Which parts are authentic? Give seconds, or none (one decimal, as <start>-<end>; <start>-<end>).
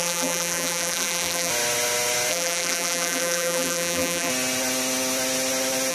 1.5-2.3; 4.3-5.9